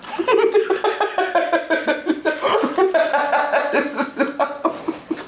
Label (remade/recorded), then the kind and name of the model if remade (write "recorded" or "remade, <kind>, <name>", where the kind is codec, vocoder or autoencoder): recorded